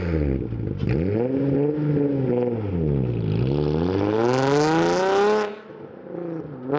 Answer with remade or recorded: recorded